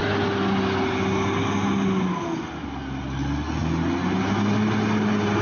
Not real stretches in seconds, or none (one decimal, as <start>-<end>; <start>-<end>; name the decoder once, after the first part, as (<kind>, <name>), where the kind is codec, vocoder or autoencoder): none